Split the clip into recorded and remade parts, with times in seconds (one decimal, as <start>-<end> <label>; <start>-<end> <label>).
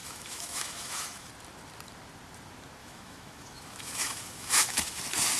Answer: 0.0-1.3 remade; 1.3-2.8 recorded; 2.8-5.0 remade; 5.0-5.4 recorded